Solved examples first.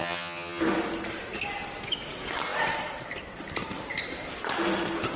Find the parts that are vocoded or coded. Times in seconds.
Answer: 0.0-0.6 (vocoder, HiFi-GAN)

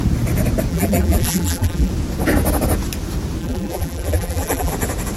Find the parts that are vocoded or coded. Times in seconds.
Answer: 0.7-1.9 (vocoder, BigVGAN v2); 3.4-4.7

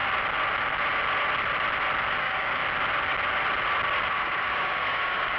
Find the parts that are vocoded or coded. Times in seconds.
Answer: 2.2-2.6 (codec, DAC); 4.1-5.4

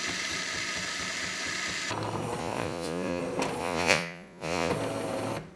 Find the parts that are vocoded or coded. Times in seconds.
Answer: 2.4-3.2 (vocoder, Vocos); 3.6-4.7

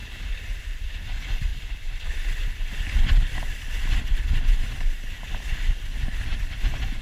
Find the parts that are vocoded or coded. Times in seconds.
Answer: 1.5-2.1 (vocoder, BigVGAN v2); 6.3-7.0

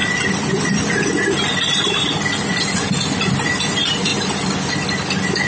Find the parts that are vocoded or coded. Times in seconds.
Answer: none